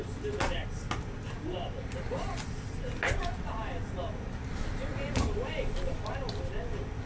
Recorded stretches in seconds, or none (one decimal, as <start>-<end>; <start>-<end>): 0.0-7.1